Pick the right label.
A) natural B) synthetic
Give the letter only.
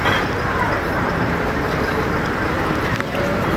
A